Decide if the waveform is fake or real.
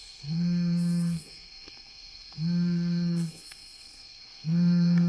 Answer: fake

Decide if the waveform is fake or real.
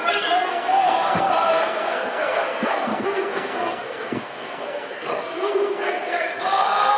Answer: fake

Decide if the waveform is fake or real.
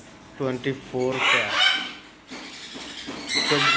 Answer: real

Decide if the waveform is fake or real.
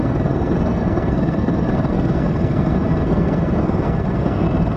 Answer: fake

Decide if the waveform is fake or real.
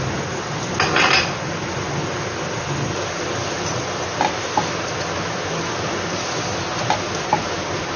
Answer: real